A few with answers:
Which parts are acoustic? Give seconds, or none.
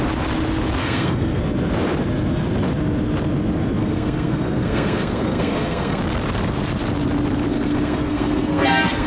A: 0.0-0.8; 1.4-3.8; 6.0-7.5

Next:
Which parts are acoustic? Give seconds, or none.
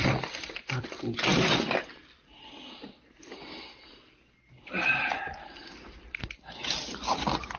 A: 0.0-7.6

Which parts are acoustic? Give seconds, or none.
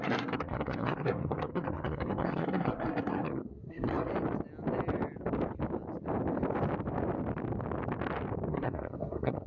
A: 4.1-8.5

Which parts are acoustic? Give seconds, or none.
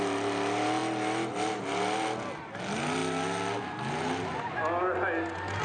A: 0.0-5.6